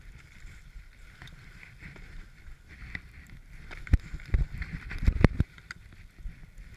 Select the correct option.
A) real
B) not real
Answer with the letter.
B